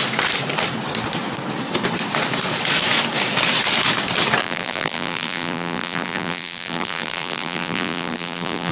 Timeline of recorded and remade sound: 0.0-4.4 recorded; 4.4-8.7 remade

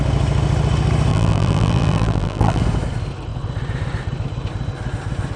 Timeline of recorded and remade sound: 0.0-1.1 recorded; 1.1-2.6 remade; 2.6-5.4 recorded

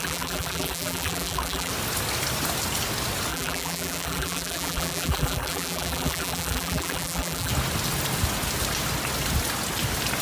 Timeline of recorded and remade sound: 0.0-1.7 remade; 1.7-3.3 recorded; 3.3-7.5 remade; 7.5-10.2 recorded

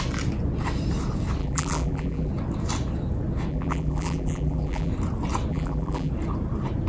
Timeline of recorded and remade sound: 0.0-1.4 recorded; 1.4-2.3 remade; 2.3-3.5 recorded; 3.5-4.9 remade; 4.9-5.5 recorded; 5.5-6.1 remade; 6.1-6.9 recorded

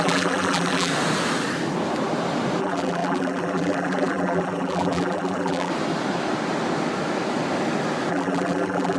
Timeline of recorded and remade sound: 0.0-0.9 remade; 0.9-2.6 recorded; 2.6-5.7 remade; 5.7-8.1 recorded; 8.1-9.0 remade

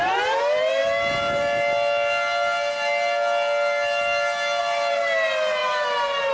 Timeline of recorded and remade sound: 0.0-0.8 remade; 0.8-4.6 recorded; 4.6-6.3 remade